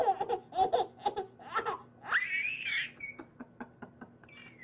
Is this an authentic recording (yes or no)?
yes